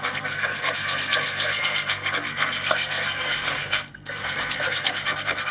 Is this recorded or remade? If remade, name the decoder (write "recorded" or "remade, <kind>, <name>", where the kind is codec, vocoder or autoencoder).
remade, codec, SNAC